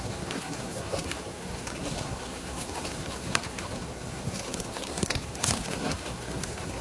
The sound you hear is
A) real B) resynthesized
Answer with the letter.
B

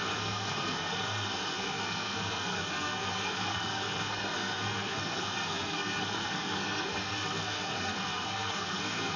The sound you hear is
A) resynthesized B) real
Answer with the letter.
A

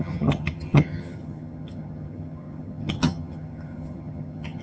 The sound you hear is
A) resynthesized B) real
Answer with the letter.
A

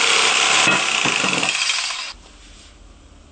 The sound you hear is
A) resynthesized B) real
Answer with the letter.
B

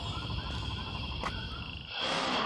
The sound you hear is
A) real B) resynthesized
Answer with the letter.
A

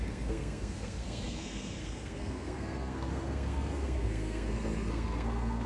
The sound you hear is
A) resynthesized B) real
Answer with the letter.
A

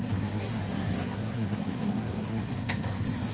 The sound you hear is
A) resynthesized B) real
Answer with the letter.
A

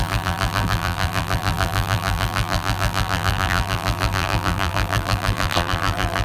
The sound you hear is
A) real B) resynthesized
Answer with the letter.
B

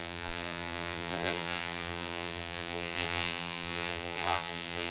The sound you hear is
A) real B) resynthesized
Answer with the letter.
B